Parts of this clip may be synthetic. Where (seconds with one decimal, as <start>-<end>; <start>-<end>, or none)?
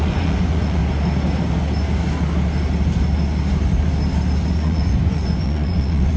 0.0-0.8; 4.5-6.2